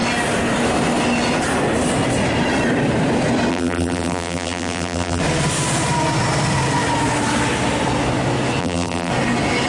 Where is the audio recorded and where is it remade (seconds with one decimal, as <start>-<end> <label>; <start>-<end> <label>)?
0.0-3.5 recorded; 3.5-5.2 remade; 5.2-8.6 recorded; 8.6-9.1 remade; 9.1-9.7 recorded